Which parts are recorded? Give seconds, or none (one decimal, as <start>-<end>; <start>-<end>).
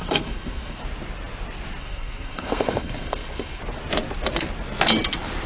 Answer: 0.8-1.8; 3.6-5.5